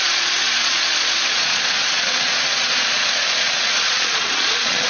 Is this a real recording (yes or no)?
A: no